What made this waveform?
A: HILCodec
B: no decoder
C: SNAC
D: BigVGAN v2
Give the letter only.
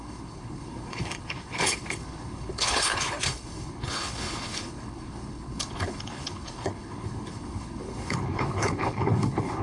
A